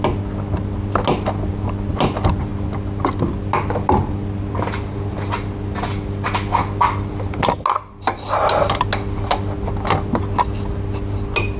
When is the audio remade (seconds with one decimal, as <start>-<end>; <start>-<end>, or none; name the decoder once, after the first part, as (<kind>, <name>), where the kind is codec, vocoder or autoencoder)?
none

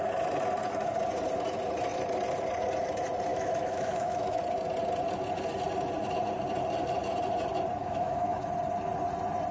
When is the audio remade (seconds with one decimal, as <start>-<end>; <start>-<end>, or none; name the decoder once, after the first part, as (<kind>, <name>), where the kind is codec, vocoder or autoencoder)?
3.3-4.4 (autoencoder, DAC-VAE); 7.8-8.4

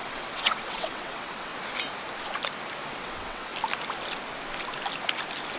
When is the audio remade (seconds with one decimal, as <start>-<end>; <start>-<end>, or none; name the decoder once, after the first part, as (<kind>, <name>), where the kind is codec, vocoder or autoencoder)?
0.0-1.5 (vocoder, WaveNeXt); 2.9-3.5

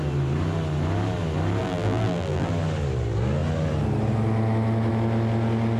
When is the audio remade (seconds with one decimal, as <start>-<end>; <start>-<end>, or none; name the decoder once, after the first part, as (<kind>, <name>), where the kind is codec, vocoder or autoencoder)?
1.6-2.5 (vocoder, BigVGAN v2)

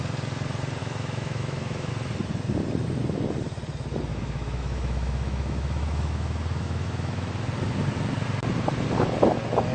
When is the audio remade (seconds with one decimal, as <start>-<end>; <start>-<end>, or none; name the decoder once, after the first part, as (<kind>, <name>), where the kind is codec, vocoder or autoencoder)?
0.8-1.9 (autoencoder, DAC-VAE); 4.1-7.3

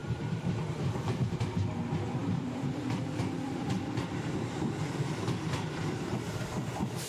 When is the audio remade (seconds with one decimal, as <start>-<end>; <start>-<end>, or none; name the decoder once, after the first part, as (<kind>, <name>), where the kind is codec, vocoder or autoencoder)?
0.0-0.6 (vocoder, BigVGAN v2); 2.2-6.1

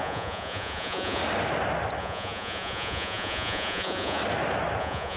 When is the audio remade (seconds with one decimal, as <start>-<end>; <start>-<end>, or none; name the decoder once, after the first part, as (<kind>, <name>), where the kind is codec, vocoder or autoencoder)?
0.0-1.2 (vocoder, Vocos); 2.0-4.2; 4.8-5.2

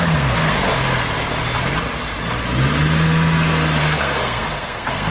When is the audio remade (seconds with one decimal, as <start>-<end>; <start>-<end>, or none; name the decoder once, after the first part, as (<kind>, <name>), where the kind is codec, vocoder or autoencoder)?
0.0-0.7 (codec, SNAC); 3.8-5.1